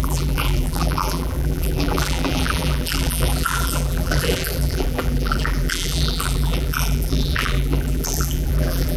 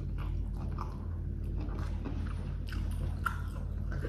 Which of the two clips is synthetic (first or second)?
first